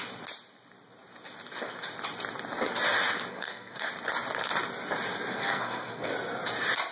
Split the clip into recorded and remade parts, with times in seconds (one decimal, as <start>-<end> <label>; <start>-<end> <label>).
0.0-3.3 recorded; 3.3-3.9 remade; 3.9-5.3 recorded; 5.3-6.1 remade; 6.1-6.9 recorded